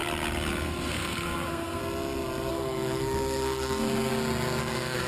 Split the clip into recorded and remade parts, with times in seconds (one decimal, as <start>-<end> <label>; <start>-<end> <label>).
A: 0.0-0.9 recorded; 0.9-1.8 remade; 1.8-2.5 recorded; 2.5-4.1 remade; 4.1-4.6 recorded; 4.6-5.1 remade